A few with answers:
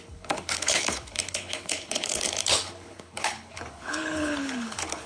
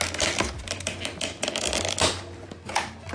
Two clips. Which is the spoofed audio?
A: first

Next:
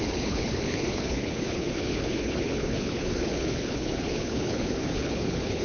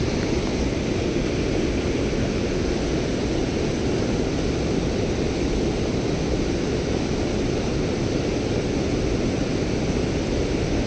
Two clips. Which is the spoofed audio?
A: first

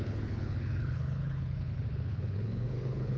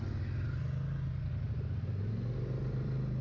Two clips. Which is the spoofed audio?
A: first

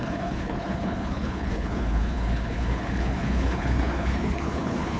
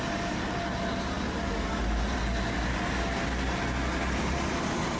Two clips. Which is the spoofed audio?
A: first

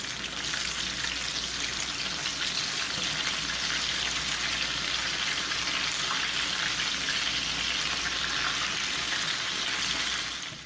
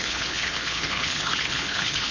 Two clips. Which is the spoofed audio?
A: second